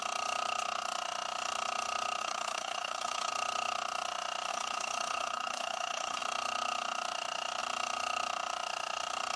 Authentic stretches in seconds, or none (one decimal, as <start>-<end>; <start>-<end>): 0.0-2.2; 3.3-4.5; 6.2-9.4